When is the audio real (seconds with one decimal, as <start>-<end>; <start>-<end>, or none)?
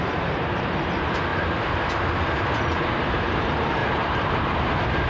1.3-3.1